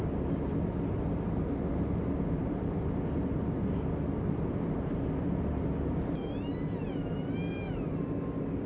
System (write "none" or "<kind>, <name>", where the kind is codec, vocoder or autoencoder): none